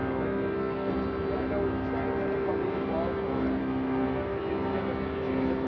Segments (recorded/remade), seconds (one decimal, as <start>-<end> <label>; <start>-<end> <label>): 0.0-0.9 remade; 0.9-3.6 recorded; 3.6-4.4 remade; 4.4-5.7 recorded